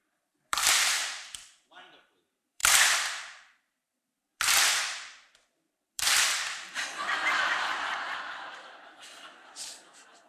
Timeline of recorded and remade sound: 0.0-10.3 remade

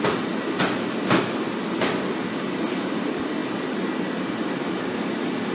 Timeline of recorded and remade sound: 0.0-5.5 recorded

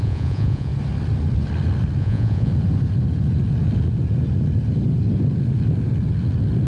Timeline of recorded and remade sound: 0.0-0.7 remade; 0.7-2.0 recorded; 2.0-2.5 remade; 2.5-6.7 recorded

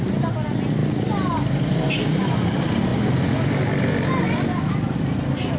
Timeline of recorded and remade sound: 0.0-5.6 recorded